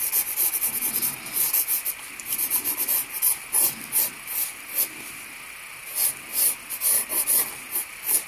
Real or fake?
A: real